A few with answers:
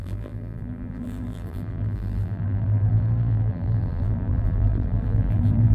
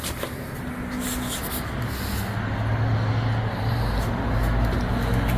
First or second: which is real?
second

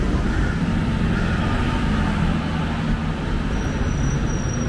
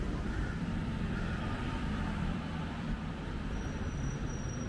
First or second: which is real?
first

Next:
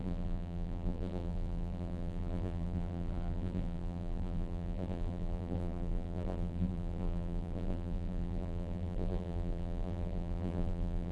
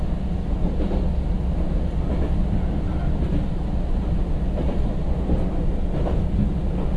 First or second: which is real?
second